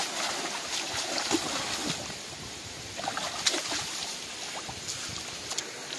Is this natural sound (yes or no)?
yes